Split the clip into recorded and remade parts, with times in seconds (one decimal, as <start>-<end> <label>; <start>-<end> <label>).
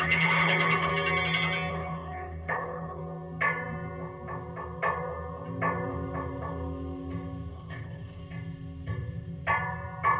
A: 0.0-0.9 remade; 0.9-1.7 recorded; 1.7-3.0 remade; 3.0-7.5 recorded; 7.5-8.2 remade; 8.2-10.2 recorded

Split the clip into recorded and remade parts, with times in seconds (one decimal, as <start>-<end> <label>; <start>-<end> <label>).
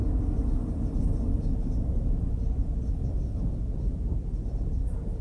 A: 0.0-5.2 recorded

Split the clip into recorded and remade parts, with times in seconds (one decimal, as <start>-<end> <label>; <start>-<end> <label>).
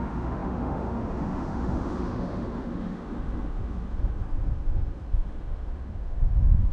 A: 0.0-6.7 remade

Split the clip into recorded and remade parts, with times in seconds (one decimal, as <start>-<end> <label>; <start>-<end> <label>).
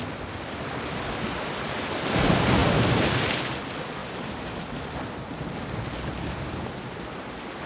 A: 0.0-4.0 recorded; 4.0-5.0 remade; 5.0-7.7 recorded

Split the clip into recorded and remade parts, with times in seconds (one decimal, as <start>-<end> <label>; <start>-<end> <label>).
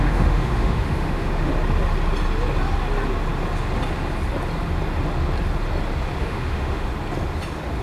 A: 0.0-1.5 remade; 1.5-6.2 recorded; 6.2-6.9 remade; 6.9-7.8 recorded